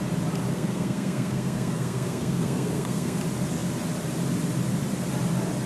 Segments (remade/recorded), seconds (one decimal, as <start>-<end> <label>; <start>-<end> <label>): 0.0-0.5 recorded; 0.5-3.2 remade; 3.2-5.7 recorded